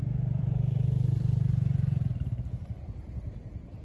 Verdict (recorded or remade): remade